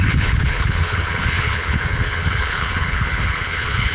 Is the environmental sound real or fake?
fake